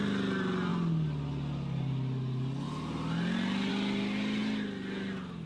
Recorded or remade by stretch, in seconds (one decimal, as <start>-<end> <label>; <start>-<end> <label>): 0.0-5.5 recorded

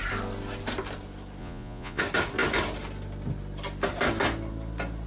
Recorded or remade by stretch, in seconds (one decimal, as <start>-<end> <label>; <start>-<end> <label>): 0.0-1.4 recorded; 1.4-2.0 remade; 2.0-5.1 recorded